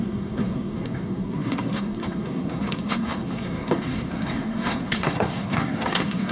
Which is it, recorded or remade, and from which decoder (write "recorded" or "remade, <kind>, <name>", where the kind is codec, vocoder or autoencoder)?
remade, codec, SNAC